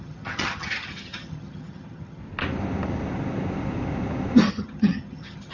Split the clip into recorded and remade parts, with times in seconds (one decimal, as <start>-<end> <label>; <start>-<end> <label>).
0.0-2.2 remade; 2.2-4.5 recorded; 4.5-5.5 remade